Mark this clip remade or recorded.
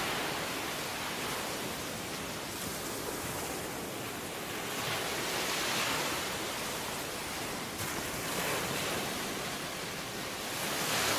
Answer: recorded